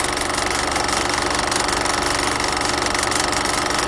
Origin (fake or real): real